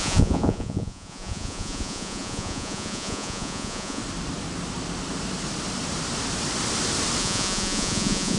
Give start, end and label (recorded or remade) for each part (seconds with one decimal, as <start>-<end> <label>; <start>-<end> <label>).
0.0-4.0 remade; 4.0-7.2 recorded; 7.2-8.4 remade

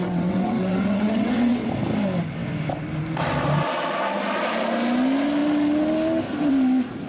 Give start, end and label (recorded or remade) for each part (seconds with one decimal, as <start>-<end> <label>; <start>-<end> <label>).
0.0-1.7 remade; 1.7-7.1 recorded